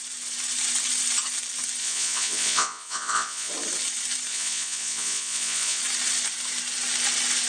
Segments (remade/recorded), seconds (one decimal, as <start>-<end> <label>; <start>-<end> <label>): 0.0-1.8 recorded; 1.8-3.5 remade; 3.5-4.3 recorded; 4.3-5.8 remade; 5.8-7.5 recorded